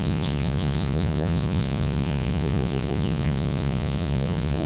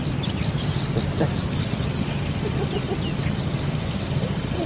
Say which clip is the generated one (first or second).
first